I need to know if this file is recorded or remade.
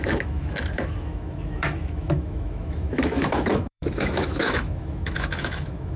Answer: remade